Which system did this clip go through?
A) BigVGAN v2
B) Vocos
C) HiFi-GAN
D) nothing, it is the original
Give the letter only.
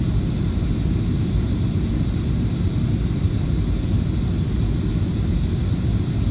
D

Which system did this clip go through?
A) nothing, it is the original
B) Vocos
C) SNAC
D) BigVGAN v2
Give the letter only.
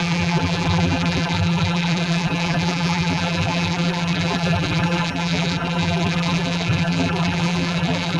D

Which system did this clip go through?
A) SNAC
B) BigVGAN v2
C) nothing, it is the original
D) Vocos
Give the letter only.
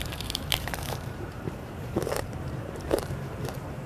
B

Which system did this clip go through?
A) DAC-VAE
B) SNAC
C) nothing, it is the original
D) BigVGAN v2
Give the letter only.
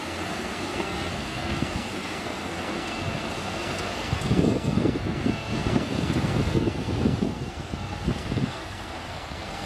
B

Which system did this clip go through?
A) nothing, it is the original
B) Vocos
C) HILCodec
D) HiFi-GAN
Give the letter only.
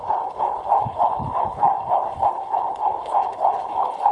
C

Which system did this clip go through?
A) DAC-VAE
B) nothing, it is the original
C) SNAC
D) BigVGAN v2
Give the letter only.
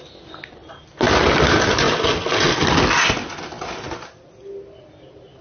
B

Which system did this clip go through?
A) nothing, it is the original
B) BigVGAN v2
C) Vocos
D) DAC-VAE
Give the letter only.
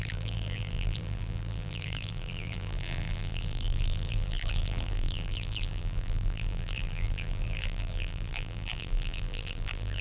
B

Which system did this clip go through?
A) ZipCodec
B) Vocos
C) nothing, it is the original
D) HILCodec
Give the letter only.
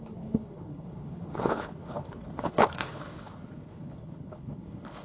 D